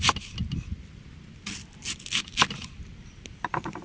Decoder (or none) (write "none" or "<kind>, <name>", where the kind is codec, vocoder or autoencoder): none